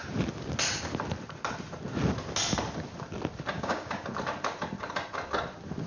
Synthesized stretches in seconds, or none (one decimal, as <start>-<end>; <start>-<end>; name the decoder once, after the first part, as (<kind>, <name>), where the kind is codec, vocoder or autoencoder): 3.5-4.1 (codec, DAC)